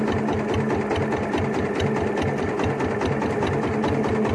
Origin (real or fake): real